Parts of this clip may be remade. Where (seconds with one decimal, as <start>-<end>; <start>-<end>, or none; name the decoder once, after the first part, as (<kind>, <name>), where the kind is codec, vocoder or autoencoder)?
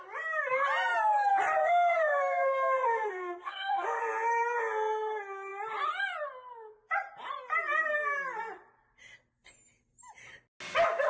1.6-4.0 (codec, SNAC)